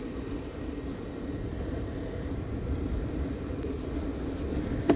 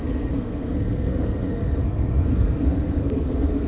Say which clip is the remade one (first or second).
second